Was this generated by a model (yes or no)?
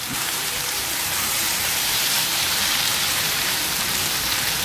yes